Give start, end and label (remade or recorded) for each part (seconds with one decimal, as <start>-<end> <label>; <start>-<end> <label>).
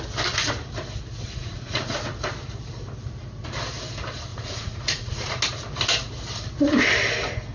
0.0-1.4 recorded; 1.4-2.1 remade; 2.1-4.3 recorded; 4.3-5.4 remade; 5.4-7.5 recorded